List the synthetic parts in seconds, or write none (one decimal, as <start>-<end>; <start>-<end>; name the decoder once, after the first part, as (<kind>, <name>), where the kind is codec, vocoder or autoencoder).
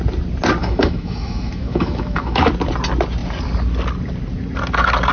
0.6-2.5 (autoencoder, DAC-VAE)